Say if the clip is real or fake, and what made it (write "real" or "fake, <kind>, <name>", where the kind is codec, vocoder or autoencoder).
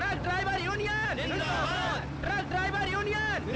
real